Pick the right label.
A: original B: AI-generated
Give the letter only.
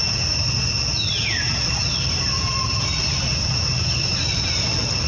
A